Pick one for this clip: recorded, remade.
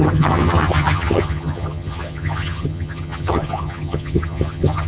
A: remade